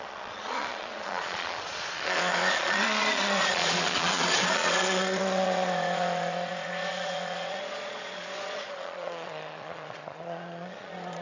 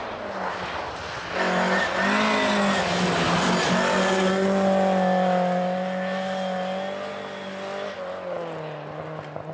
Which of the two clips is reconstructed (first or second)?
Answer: first